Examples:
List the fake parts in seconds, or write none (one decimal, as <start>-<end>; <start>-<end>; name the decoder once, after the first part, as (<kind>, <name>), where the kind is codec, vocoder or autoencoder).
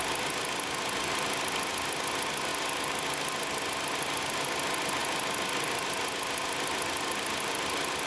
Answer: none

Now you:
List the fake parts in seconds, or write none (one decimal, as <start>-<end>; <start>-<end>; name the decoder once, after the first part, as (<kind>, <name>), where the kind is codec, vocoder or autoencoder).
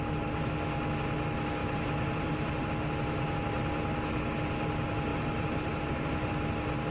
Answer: 1.6-2.7 (vocoder, BigVGAN v2); 5.1-6.3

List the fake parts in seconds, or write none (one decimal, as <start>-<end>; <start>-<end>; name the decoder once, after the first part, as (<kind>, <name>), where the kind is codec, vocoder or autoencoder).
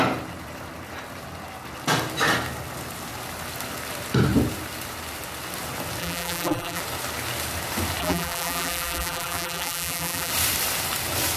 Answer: 6.0-6.8 (vocoder, BigVGAN v2); 8.0-10.3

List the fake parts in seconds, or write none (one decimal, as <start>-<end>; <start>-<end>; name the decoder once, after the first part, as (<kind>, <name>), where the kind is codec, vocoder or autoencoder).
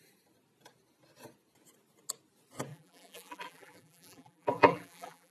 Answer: 2.7-5.3 (vocoder, BigVGAN v2)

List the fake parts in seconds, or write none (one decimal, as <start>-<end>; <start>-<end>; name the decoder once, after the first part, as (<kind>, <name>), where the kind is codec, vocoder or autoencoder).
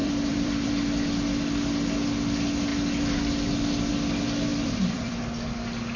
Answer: 0.0-0.7 (vocoder, BigVGAN v2); 4.5-5.2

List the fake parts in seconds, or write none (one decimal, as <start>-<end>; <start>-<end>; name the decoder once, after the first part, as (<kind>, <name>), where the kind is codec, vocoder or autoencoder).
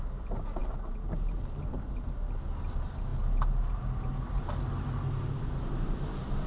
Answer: none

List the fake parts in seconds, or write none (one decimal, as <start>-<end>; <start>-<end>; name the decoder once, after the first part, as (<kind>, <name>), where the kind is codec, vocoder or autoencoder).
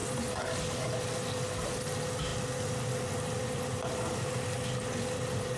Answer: none